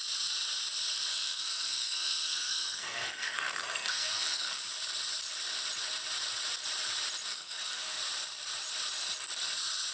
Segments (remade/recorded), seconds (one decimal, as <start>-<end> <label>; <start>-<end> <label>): 0.0-1.1 recorded; 1.1-4.6 remade; 4.6-7.3 recorded; 7.3-8.0 remade; 8.0-9.9 recorded